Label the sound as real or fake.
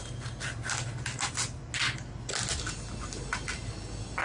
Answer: real